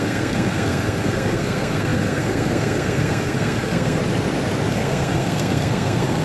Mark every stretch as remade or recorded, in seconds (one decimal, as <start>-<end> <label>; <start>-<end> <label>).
0.0-4.0 remade; 4.0-4.7 recorded; 4.7-6.2 remade